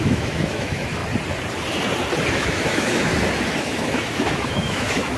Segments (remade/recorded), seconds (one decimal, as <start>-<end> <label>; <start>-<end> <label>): 0.0-1.0 remade; 1.0-2.3 recorded; 2.3-3.1 remade; 3.1-3.6 recorded; 3.6-5.2 remade